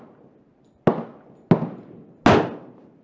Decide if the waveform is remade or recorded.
recorded